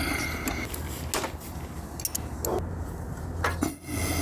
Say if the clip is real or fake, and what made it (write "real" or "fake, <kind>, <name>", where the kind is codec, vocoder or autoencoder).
real